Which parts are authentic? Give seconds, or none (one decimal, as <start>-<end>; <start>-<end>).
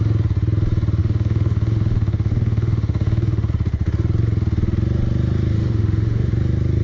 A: 0.0-1.0; 3.5-5.5; 6.3-6.8